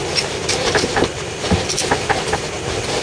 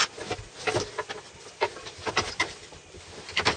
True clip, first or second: second